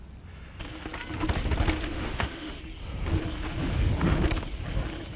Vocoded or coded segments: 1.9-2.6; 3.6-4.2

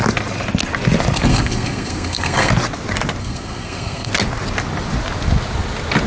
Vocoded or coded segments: 1.3-2.5; 3.2-4.1